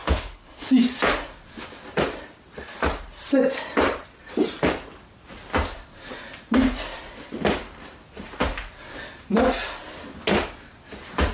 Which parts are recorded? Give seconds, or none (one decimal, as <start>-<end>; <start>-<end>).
0.7-11.3

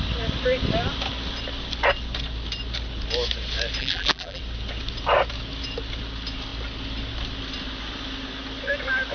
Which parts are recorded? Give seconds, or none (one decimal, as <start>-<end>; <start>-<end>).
0.0-3.8; 4.4-9.1

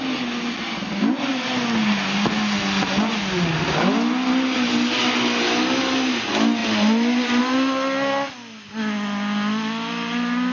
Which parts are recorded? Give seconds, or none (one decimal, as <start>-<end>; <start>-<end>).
0.0-10.5

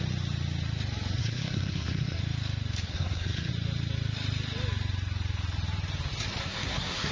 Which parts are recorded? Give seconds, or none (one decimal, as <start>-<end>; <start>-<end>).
0.0-1.2; 2.2-2.9; 3.5-6.4

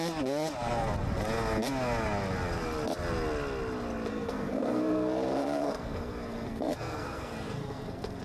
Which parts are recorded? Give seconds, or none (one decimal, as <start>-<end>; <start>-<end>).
0.0-4.1

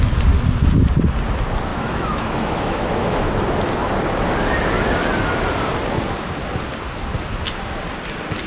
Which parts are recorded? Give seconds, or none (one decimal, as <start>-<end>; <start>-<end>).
0.0-1.7; 3.2-8.5

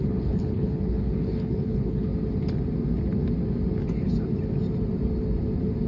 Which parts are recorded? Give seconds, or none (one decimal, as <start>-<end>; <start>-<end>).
2.1-5.9

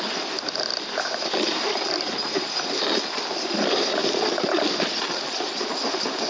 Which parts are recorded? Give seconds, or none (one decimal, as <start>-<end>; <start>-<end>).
0.0-6.3